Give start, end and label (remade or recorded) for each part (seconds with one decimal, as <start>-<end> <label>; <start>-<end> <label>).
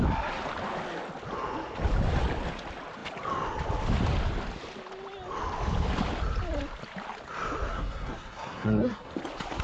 0.0-7.7 recorded; 7.7-9.1 remade; 9.1-9.6 recorded